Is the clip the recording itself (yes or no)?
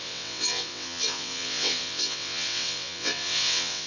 no